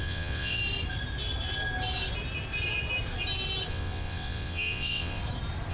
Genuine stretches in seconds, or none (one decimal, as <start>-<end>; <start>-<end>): 0.6-3.7; 5.2-5.7